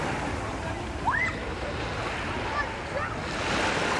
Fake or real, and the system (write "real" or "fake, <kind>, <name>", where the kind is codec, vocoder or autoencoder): real